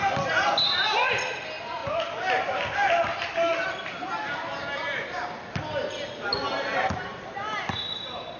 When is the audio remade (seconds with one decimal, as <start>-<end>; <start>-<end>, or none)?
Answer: none